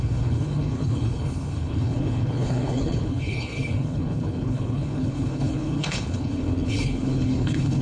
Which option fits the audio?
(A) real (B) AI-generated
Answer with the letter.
B